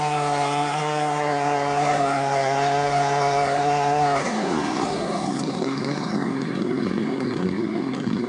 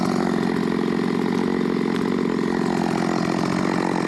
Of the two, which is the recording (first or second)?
second